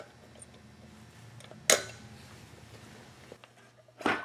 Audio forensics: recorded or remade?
recorded